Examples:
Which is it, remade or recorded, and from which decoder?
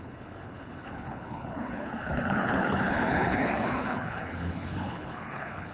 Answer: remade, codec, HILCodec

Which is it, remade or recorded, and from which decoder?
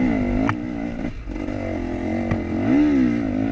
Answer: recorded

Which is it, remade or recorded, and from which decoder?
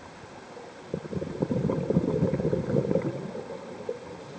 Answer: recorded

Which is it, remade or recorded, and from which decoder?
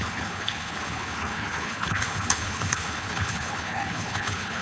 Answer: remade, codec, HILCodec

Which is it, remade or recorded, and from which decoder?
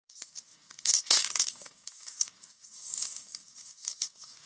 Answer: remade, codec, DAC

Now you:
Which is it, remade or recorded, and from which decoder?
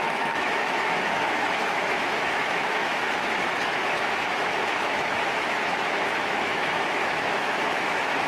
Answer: remade, autoencoder, DAC-VAE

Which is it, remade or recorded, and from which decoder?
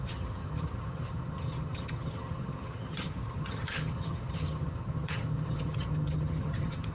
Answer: remade, vocoder, HiFi-GAN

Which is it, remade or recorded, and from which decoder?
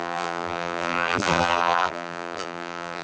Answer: remade, vocoder, BigVGAN v2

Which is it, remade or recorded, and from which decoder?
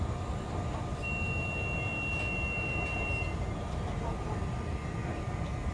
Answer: recorded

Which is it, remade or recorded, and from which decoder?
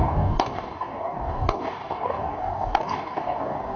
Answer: remade, codec, DAC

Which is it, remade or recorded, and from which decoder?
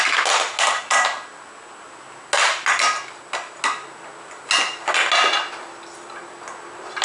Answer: recorded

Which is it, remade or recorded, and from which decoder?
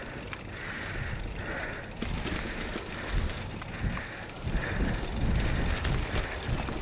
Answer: recorded